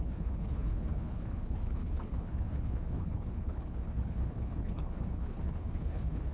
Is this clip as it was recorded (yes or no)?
no